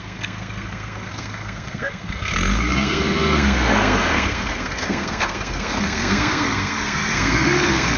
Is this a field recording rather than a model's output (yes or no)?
no